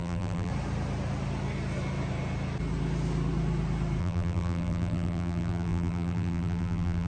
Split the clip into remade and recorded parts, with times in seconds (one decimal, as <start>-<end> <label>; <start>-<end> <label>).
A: 0.0-0.5 remade; 0.5-4.0 recorded; 4.0-7.1 remade